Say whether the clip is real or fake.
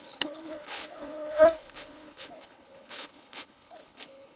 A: fake